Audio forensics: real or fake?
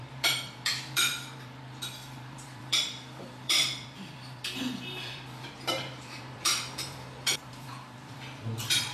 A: fake